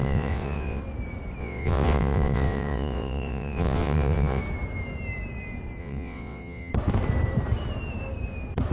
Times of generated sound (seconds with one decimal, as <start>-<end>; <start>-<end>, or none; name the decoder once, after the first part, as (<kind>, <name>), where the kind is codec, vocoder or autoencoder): 0.0-0.8 (vocoder, WaveNeXt); 1.4-4.4; 5.8-6.7